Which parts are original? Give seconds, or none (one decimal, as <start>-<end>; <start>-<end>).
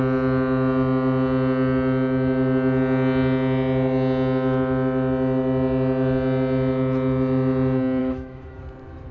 0.0-8.0; 8.6-9.1